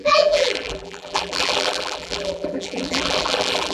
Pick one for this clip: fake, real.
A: fake